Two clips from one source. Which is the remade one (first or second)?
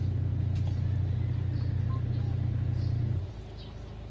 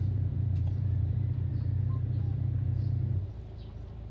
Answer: second